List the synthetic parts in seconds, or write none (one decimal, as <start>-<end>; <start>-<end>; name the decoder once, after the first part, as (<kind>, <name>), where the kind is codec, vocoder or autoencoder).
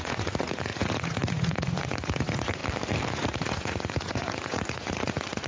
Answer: 0.0-2.6 (vocoder, Vocos); 3.1-5.5